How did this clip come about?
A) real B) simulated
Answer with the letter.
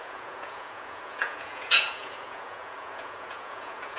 B